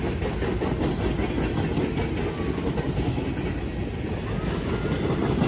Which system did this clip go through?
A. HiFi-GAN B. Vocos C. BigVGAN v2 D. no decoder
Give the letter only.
D